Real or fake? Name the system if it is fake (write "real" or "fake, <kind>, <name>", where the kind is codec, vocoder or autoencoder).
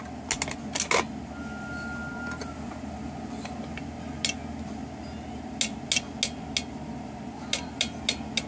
real